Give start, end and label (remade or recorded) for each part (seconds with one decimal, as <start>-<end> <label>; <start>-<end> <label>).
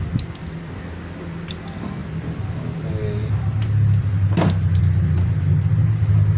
0.0-6.4 recorded